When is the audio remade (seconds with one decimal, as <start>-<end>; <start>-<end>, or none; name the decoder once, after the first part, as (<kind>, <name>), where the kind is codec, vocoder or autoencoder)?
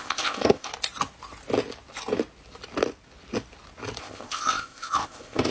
0.0-0.7 (codec, ZipCodec); 4.0-5.5